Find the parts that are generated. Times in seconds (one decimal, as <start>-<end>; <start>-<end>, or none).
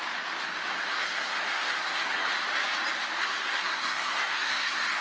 0.7-2.3; 3.2-5.0